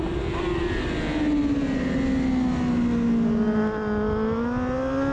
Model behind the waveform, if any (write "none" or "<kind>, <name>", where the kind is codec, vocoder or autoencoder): none